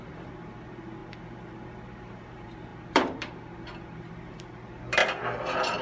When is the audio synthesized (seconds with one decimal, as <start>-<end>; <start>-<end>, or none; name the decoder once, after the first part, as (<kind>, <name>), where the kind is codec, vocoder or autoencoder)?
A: 0.0-1.0 (vocoder, BigVGAN v2); 2.1-5.0